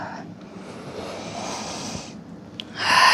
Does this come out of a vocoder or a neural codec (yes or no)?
yes